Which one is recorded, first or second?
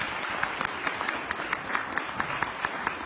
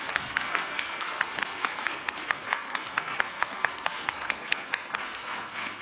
first